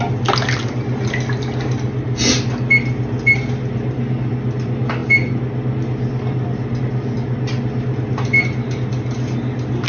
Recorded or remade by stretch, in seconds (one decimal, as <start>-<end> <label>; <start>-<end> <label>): 0.0-9.9 recorded